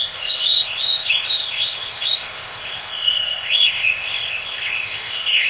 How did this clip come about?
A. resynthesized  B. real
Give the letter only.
A